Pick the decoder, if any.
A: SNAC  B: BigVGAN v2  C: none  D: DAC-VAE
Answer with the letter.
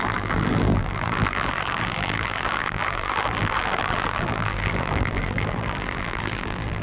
B